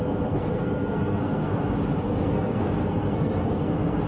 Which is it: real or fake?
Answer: fake